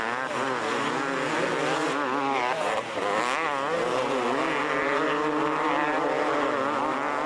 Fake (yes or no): no